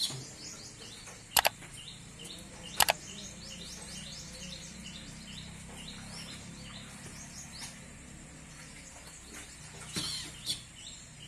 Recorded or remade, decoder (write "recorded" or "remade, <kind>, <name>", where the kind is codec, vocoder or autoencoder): recorded